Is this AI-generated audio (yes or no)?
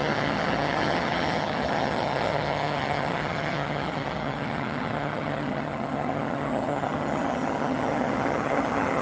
yes